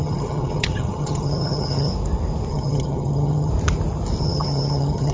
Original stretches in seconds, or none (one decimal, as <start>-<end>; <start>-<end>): 1.9-2.5; 3.5-4.2